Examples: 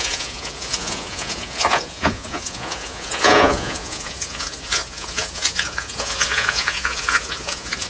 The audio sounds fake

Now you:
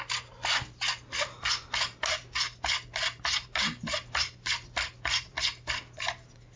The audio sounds real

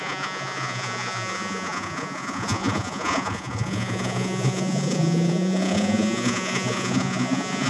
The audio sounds fake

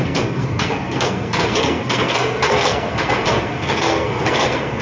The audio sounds fake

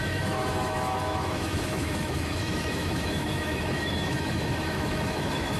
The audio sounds fake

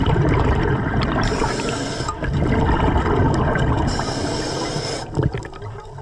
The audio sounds real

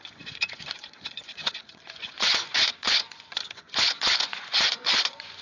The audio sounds fake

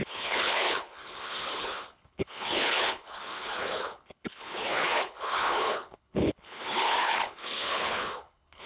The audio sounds fake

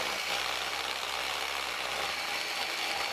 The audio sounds real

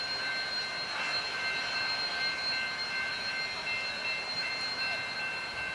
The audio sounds real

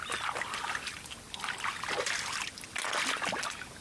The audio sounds real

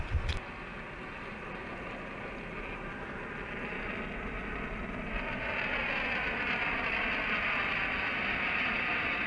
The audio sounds real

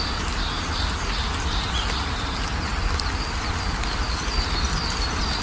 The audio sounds real